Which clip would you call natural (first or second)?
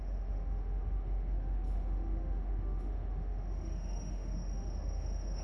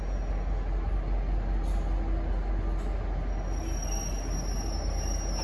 second